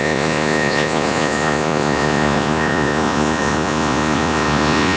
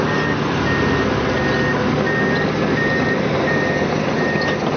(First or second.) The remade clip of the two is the first